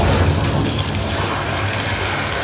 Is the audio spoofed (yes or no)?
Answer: no